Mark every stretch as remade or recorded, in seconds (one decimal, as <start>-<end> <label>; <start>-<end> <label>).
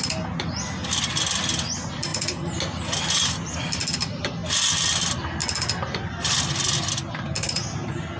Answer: 0.0-8.2 recorded